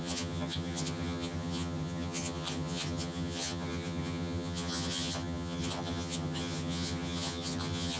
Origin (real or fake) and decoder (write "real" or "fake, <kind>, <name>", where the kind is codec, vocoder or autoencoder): fake, vocoder, HiFi-GAN